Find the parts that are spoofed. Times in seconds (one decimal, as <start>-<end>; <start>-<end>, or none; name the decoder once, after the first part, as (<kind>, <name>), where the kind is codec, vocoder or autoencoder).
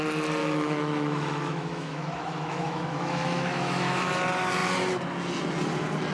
0.4-4.1 (autoencoder, DAC-VAE)